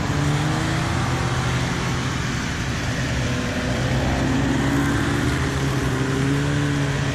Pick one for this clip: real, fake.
real